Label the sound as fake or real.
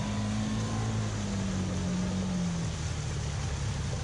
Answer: real